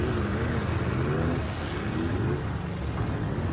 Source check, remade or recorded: recorded